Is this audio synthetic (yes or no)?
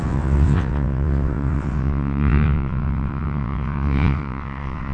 yes